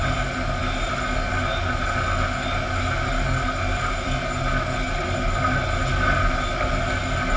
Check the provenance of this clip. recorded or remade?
recorded